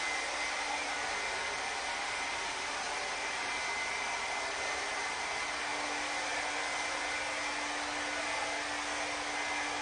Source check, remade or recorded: recorded